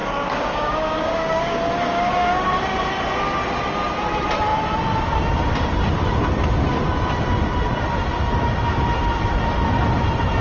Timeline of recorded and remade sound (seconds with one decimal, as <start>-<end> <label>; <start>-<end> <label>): 0.0-2.5 remade; 2.5-10.4 recorded